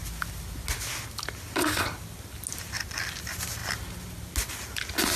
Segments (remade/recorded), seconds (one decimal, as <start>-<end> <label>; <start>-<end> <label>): 0.0-5.2 recorded